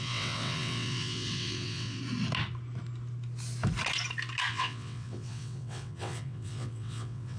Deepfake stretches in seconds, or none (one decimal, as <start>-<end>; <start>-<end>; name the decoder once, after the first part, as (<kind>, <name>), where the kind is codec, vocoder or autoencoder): 0.0-2.0 (vocoder, WaveNeXt); 4.5-7.4